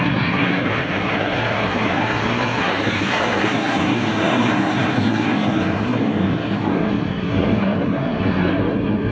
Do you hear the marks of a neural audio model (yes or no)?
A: yes